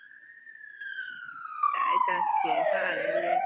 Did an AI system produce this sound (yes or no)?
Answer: yes